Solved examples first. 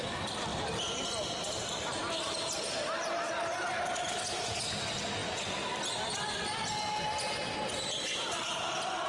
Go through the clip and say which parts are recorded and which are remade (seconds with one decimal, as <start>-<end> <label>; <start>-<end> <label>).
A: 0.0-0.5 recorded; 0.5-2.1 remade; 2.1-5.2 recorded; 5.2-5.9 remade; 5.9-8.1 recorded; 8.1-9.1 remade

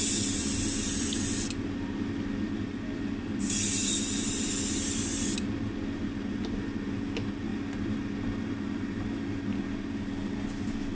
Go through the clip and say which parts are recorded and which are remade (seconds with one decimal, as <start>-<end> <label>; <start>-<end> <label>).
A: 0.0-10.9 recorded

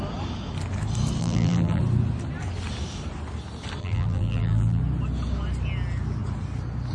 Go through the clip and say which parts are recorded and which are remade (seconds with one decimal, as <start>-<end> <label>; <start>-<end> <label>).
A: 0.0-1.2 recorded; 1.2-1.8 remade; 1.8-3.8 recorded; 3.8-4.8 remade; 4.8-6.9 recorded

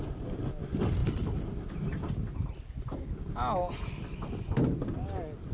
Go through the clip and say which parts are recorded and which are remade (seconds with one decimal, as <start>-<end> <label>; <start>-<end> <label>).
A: 0.0-5.5 recorded

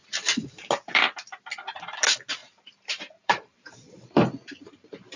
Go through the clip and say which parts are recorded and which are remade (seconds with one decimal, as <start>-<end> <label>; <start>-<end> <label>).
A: 0.0-2.4 recorded; 2.4-5.2 remade

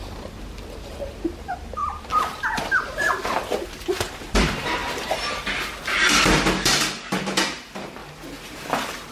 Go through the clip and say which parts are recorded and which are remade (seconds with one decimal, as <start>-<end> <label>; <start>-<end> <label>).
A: 0.0-4.8 remade; 4.8-7.1 recorded; 7.1-8.0 remade; 8.0-8.7 recorded; 8.7-9.1 remade

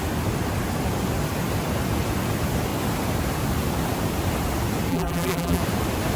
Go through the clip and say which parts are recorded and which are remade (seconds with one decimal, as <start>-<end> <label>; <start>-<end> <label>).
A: 0.0-4.9 recorded; 4.9-5.6 remade; 5.6-6.2 recorded

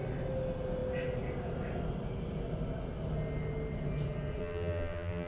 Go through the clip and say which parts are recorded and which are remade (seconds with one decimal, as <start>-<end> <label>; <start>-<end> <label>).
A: 0.0-4.4 recorded; 4.4-5.3 remade